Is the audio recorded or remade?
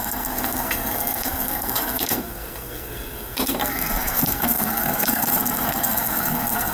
remade